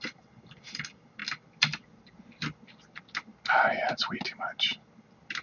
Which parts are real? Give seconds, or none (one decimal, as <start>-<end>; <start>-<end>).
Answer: 0.0-5.4